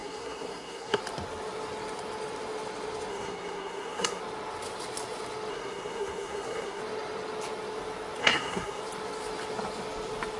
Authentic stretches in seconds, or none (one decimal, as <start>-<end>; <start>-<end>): 1.0-3.1; 4.2-5.5; 6.8-8.2; 8.8-10.4